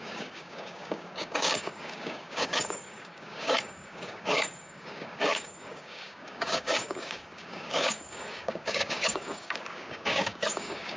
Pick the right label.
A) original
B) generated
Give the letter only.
B